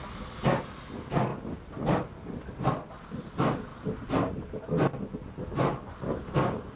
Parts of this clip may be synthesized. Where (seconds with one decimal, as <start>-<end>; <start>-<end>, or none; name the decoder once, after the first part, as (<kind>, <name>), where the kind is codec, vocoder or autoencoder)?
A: none